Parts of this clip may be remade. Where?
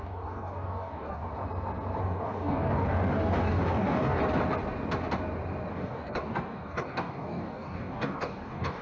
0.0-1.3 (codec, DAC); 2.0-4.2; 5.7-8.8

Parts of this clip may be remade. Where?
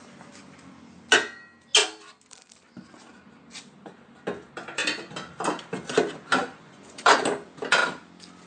6.4-7.2 (vocoder, Vocos)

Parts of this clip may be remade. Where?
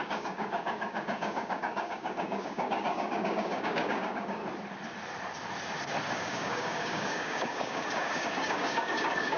0.0-4.4 (codec, DAC); 6.1-9.4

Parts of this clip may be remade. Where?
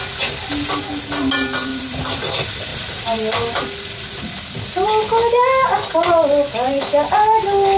1.7-2.2 (vocoder, BigVGAN v2); 2.7-3.6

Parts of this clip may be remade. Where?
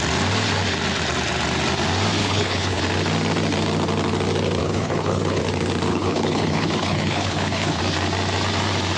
2.2-2.8 (codec, HILCodec); 4.6-5.4; 5.9-7.8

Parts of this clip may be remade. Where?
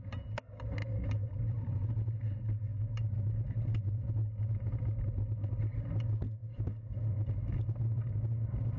none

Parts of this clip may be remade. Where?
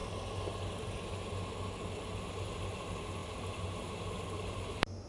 3.2-4.0 (vocoder, BigVGAN v2)